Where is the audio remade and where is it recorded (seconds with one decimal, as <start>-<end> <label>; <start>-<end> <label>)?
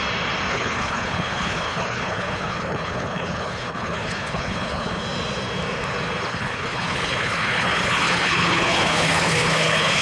0.0-0.5 recorded; 0.5-5.0 remade; 5.0-6.3 recorded; 6.3-10.0 remade